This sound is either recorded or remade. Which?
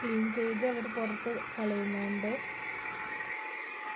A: recorded